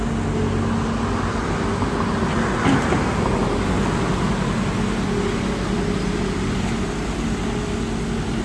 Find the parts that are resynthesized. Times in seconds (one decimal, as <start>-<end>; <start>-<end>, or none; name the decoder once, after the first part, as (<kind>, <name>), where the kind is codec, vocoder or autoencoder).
none